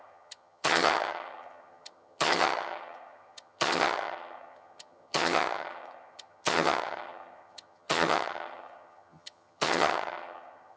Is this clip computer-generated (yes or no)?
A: yes